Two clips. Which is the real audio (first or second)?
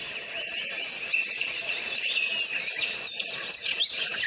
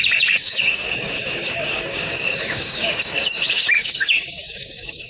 first